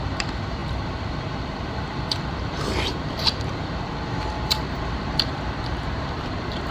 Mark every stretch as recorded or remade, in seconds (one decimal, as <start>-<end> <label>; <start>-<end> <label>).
0.0-6.7 remade